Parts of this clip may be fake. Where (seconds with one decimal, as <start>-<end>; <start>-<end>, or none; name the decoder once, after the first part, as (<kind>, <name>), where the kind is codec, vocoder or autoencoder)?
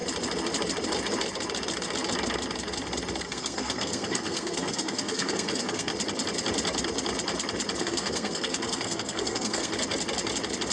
3.2-5.9 (codec, SNAC); 7.8-9.7